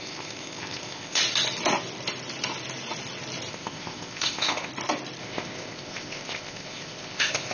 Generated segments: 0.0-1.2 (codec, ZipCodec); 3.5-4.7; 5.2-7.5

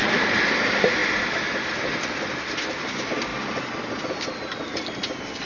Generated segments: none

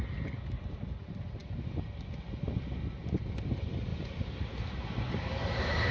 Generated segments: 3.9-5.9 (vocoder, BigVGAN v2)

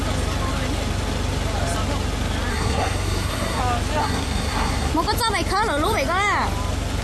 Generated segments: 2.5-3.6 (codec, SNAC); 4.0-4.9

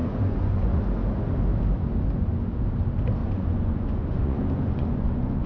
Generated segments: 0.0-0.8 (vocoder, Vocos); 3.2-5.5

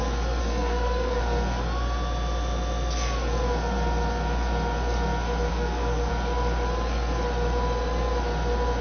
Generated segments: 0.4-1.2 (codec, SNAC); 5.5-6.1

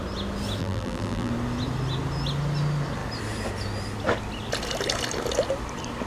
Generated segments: 0.6-1.3 (vocoder, BigVGAN v2)

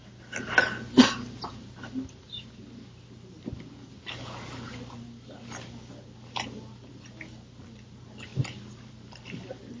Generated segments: none